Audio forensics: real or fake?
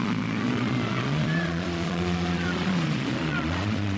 fake